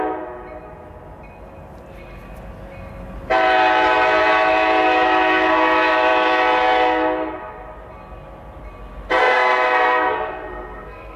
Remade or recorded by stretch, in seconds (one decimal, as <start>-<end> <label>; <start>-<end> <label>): 0.0-9.2 recorded; 9.2-11.2 remade